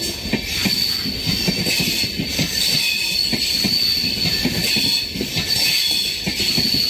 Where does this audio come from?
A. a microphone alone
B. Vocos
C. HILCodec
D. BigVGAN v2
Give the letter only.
A